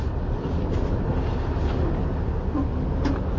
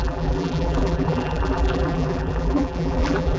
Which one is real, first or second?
first